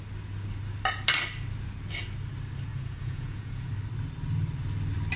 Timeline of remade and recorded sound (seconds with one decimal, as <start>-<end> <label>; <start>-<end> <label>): 0.0-2.7 recorded; 2.7-3.7 remade; 3.7-5.2 recorded